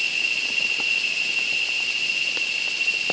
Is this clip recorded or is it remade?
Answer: recorded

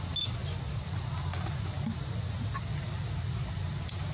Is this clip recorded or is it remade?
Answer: recorded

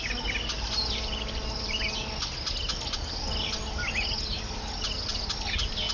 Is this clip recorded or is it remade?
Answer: recorded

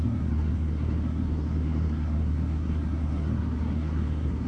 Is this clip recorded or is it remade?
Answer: remade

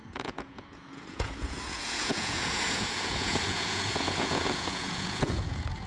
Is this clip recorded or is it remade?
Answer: remade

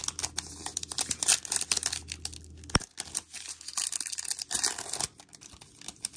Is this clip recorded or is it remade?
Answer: recorded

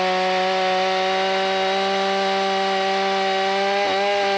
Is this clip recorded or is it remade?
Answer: recorded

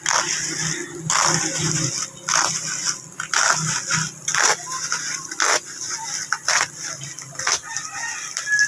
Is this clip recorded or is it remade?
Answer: recorded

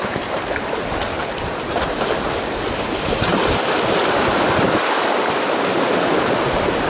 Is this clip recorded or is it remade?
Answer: recorded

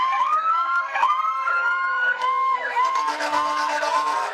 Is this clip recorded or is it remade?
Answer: remade